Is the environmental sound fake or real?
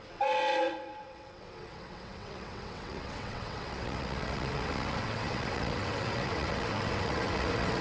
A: fake